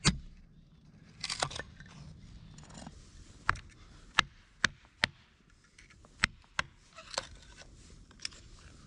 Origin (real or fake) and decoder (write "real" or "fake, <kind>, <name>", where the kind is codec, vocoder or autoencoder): real